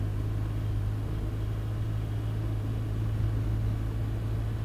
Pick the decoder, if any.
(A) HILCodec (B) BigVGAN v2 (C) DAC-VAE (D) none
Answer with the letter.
D